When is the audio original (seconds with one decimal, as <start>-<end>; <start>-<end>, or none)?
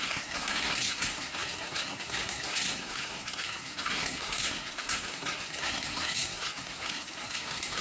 none